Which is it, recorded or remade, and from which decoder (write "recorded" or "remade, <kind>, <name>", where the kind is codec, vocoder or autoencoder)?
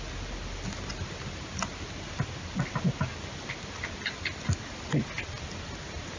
recorded